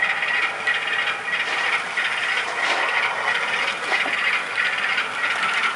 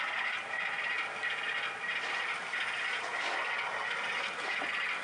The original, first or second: second